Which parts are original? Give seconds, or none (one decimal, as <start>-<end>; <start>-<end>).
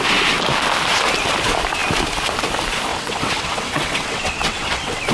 0.0-2.9